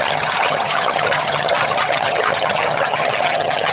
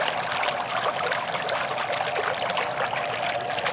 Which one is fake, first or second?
first